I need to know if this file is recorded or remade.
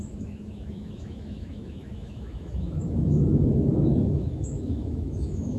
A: remade